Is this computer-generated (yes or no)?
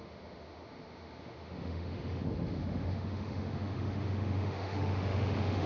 yes